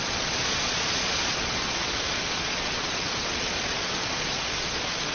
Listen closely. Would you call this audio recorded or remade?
remade